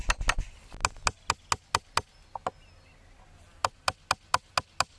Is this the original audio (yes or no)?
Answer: yes